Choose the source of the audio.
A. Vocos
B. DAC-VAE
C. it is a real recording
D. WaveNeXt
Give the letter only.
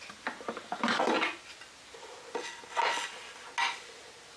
C